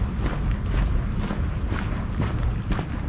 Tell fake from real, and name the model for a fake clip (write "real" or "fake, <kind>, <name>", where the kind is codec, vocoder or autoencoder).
real